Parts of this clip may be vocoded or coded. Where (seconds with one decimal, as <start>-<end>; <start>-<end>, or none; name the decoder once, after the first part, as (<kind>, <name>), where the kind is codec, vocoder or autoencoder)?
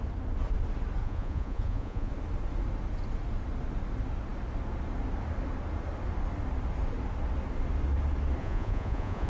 1.0-2.1 (vocoder, Vocos); 8.4-9.3